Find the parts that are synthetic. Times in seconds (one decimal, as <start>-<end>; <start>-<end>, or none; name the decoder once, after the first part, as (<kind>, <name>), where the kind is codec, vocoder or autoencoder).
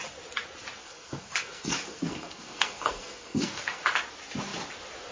0.8-3.8 (codec, SNAC)